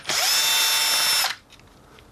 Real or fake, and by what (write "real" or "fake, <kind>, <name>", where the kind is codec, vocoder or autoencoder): real